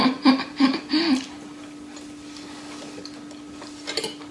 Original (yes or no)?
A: yes